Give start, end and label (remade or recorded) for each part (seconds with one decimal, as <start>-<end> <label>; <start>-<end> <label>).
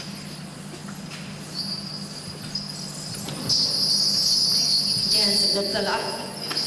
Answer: 0.0-5.7 recorded; 5.7-6.3 remade; 6.3-6.7 recorded